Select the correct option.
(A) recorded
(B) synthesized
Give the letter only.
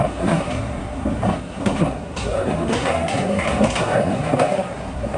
B